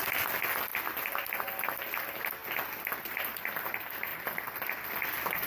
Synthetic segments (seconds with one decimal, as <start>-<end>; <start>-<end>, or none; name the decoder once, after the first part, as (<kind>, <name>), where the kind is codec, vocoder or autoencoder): none